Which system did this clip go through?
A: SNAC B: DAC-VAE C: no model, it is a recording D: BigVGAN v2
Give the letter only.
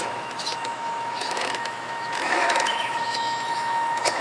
B